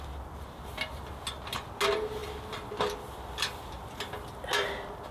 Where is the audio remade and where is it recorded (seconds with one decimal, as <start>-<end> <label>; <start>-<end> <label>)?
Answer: 0.0-5.1 recorded